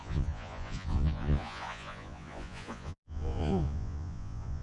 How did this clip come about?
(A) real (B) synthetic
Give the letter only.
B